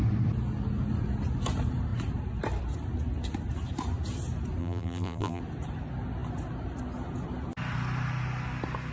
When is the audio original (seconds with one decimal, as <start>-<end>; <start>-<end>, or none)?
0.0-4.6; 5.4-8.9